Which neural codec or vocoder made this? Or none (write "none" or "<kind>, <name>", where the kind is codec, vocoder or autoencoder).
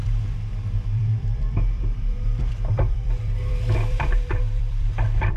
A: vocoder, BigVGAN v2